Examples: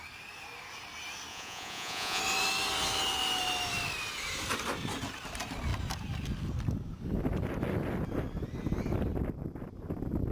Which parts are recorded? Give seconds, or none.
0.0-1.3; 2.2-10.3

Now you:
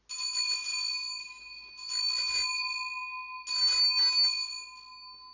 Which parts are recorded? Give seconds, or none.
0.0-1.2; 1.7-5.3

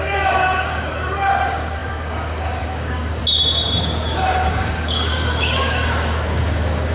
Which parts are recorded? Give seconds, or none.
3.2-3.8

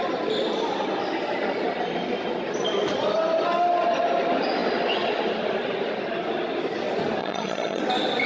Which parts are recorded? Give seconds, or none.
0.0-7.2; 7.8-8.3

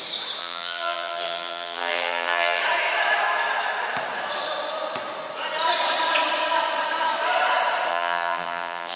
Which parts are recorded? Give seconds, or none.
0.0-0.4; 2.6-7.9